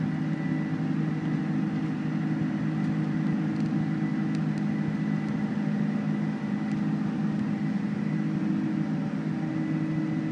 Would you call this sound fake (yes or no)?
no